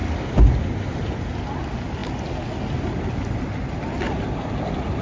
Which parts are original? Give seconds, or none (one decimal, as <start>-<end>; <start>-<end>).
0.0-5.0